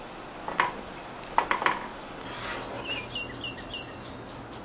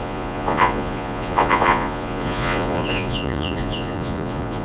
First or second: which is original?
first